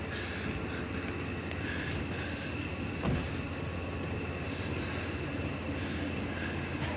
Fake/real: real